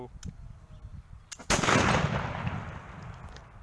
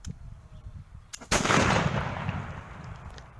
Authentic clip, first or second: first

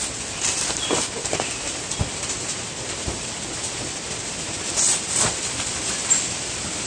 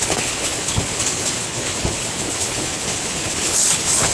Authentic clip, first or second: first